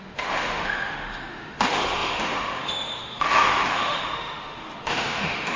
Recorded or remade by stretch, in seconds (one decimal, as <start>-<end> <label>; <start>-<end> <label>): 0.0-5.6 remade